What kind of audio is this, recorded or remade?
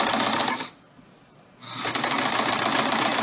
recorded